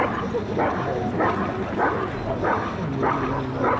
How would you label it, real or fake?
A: real